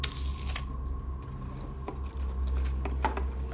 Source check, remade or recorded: recorded